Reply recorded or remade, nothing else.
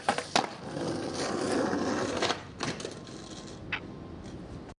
recorded